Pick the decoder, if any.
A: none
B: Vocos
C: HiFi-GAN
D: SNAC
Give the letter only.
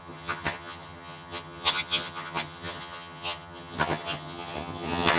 C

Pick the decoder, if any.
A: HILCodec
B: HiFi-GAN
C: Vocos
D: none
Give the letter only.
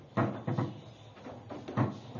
D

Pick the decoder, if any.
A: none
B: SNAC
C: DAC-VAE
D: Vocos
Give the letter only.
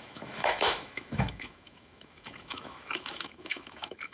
C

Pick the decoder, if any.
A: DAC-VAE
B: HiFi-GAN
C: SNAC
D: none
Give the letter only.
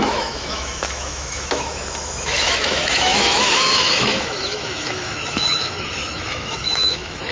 A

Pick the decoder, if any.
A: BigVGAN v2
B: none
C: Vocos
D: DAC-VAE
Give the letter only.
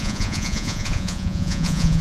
C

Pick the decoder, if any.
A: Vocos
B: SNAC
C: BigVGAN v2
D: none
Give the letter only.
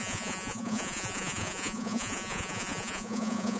A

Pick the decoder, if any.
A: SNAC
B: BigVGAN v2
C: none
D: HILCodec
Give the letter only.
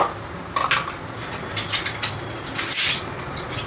C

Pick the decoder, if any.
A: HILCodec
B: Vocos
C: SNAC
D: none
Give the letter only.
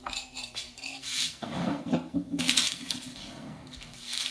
C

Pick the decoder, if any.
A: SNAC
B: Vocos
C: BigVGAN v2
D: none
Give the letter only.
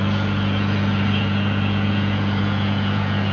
B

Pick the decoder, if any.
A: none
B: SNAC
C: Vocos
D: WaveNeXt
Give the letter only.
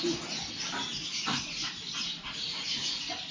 A